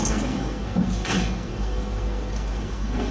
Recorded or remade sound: remade